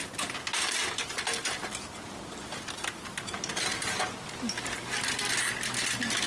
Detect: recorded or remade recorded